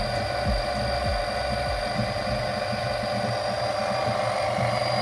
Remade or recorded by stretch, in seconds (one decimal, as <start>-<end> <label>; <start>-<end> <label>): 0.0-5.0 recorded